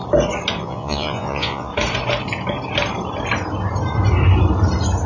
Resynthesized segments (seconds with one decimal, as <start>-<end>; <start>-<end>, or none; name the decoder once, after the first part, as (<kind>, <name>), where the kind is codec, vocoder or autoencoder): 0.6-1.7 (vocoder, Vocos)